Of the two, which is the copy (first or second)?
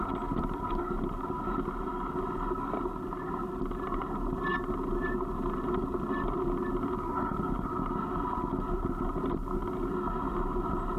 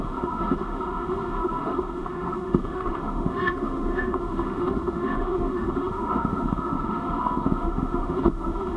second